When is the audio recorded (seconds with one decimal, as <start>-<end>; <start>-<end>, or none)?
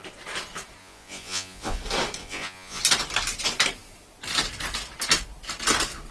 0.0-0.8; 1.8-2.2; 2.8-6.1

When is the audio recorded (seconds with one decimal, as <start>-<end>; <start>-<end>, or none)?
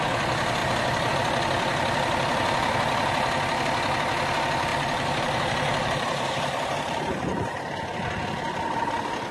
0.0-0.6; 1.1-4.7; 7.6-9.3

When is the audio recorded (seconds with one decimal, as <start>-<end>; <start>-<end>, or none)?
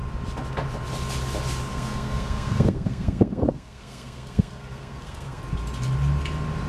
0.0-1.7; 5.4-6.7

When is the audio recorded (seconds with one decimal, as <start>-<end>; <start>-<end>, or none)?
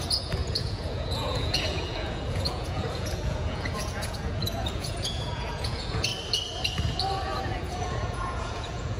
6.1-7.4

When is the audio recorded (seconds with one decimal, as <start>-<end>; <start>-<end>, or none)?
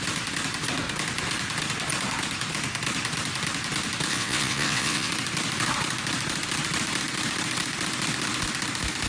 0.0-4.1; 5.1-9.1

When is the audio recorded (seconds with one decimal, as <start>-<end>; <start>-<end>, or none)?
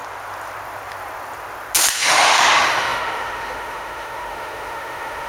0.0-1.9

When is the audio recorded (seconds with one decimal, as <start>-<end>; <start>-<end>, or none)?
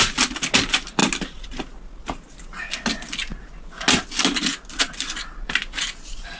0.0-6.4